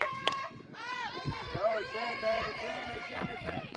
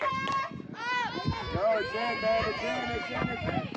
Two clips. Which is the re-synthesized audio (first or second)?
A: first